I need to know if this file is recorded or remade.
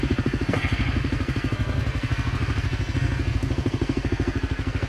remade